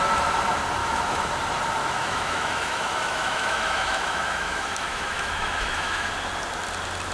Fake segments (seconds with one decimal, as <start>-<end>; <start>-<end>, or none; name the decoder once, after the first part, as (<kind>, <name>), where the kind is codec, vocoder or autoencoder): 0.8-1.3 (autoencoder, DAC-VAE); 1.8-6.1